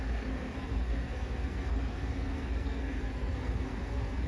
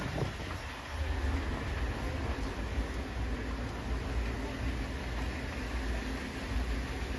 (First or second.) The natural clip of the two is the second